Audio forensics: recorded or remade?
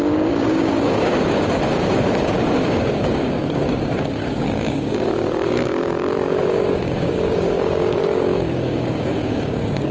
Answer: remade